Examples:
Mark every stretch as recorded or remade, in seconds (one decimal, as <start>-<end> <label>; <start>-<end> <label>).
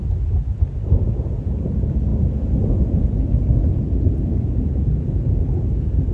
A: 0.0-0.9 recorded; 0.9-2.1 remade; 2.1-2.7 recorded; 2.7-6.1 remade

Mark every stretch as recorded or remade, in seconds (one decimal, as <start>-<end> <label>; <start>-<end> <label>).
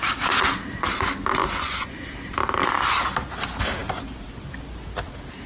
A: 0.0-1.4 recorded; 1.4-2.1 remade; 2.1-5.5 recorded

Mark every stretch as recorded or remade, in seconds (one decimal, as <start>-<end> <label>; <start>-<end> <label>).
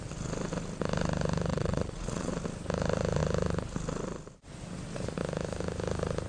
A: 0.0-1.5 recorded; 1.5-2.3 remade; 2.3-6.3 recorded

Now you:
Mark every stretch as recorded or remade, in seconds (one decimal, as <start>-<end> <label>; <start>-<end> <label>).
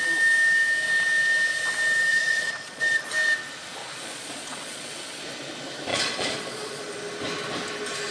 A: 0.0-2.1 recorded; 2.1-2.8 remade; 2.8-3.8 recorded; 3.8-5.2 remade; 5.2-5.9 recorded; 5.9-6.8 remade; 6.8-8.1 recorded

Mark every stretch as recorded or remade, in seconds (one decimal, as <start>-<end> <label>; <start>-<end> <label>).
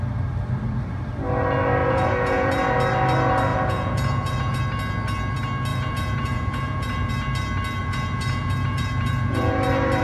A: 0.0-1.8 recorded; 1.8-2.5 remade; 2.5-3.5 recorded; 3.5-4.6 remade; 4.6-5.7 recorded; 5.7-7.1 remade; 7.1-7.8 recorded; 7.8-9.5 remade; 9.5-10.0 recorded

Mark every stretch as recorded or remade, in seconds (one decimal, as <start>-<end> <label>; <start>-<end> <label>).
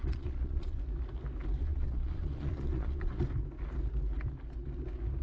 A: 0.0-0.8 remade; 0.8-1.6 recorded; 1.6-3.2 remade; 3.2-5.2 recorded